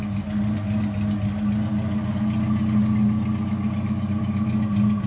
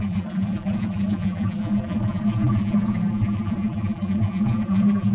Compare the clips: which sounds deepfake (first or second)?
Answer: second